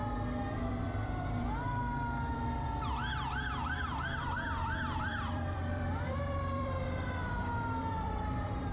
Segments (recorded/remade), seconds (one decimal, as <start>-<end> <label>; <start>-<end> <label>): 0.0-0.7 recorded; 0.7-1.8 remade; 1.8-4.2 recorded; 4.2-8.7 remade